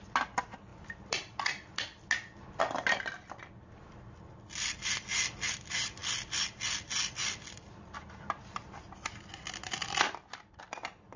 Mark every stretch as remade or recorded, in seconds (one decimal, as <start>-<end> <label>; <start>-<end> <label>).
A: 0.0-11.2 recorded